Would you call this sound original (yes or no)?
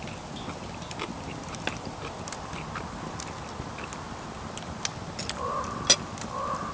yes